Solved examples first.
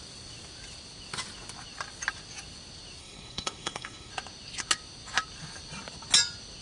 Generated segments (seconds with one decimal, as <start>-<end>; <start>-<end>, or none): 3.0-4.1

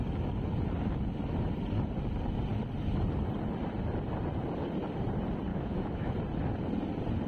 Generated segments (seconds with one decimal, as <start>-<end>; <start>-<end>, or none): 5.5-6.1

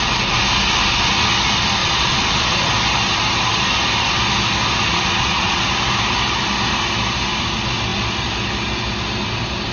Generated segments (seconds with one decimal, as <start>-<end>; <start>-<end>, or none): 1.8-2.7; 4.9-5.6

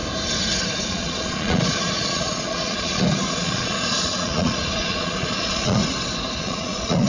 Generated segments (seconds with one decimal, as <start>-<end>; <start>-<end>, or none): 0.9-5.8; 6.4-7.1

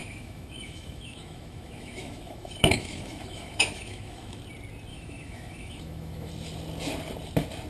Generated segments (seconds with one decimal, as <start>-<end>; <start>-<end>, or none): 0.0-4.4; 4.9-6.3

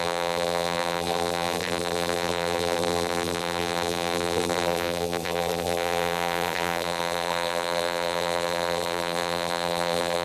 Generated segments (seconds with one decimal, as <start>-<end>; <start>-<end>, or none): 0.0-10.2